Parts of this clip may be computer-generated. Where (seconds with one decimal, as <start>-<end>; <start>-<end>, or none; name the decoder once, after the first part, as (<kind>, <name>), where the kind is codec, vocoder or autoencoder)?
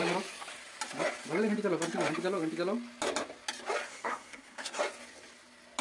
3.9-4.8 (codec, SNAC)